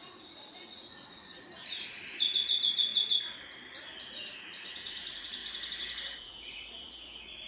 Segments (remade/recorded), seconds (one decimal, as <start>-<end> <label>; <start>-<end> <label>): 0.0-2.9 remade; 2.9-4.4 recorded; 4.4-5.4 remade; 5.4-6.2 recorded; 6.2-7.5 remade